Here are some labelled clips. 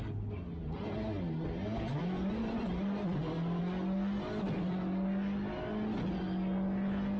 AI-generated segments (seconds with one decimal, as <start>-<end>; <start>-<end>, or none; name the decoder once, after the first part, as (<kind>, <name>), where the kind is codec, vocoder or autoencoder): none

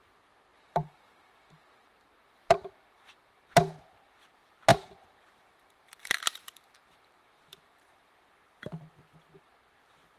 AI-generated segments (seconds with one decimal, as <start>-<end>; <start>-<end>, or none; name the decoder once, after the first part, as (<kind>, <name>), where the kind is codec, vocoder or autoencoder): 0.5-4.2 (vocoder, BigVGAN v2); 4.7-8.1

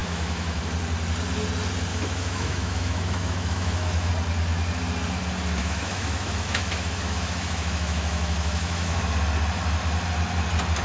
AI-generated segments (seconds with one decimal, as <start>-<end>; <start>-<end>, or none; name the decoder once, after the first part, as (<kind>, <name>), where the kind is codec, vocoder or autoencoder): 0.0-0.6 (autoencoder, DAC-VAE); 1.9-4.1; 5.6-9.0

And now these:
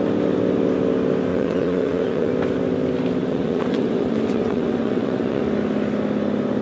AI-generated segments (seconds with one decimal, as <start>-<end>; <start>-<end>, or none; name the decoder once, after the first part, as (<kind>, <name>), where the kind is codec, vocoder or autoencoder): 1.3-2.3 (vocoder, WaveNeXt); 3.2-5.4

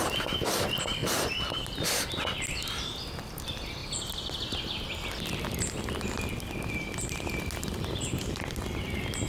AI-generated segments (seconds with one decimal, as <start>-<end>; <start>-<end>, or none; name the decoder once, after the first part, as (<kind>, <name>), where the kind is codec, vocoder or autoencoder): none